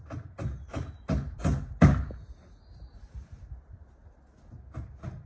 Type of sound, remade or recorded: recorded